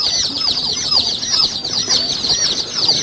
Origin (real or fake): real